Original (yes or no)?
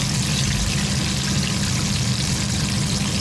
yes